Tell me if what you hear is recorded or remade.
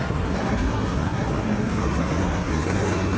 remade